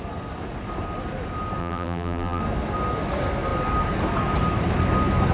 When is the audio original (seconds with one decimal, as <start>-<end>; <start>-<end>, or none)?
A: 0.0-1.6; 2.4-5.3